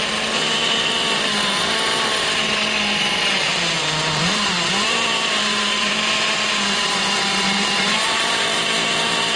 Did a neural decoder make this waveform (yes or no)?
yes